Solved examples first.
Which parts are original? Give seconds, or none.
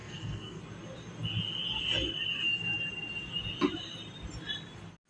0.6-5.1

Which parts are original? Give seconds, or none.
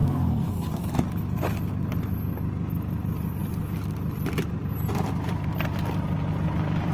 0.9-6.9